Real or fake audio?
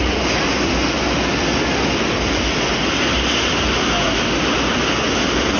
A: real